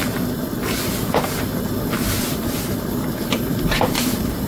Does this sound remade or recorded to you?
recorded